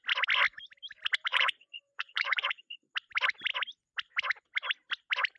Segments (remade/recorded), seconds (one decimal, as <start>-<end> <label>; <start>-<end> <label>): 0.0-1.3 recorded; 1.3-2.6 remade; 2.6-5.4 recorded